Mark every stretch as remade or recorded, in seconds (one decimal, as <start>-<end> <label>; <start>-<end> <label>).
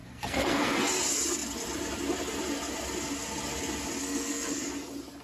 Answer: 0.0-0.8 remade; 0.8-4.0 recorded; 4.0-4.6 remade; 4.6-5.2 recorded